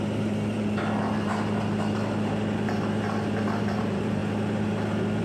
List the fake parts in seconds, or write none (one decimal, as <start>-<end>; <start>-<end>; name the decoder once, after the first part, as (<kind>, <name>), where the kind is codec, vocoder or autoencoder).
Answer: 0.0-1.3 (vocoder, BigVGAN v2); 3.6-4.2